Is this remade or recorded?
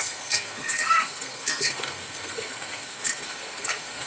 remade